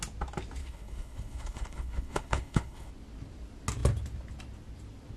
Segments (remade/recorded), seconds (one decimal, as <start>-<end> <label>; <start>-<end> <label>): 0.0-0.6 recorded; 0.6-2.9 remade; 2.9-5.2 recorded